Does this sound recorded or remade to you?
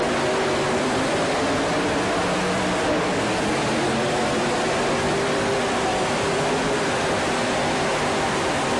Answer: remade